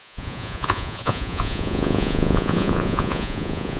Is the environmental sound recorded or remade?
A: remade